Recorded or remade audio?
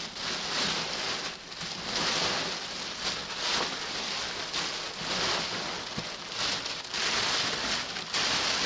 recorded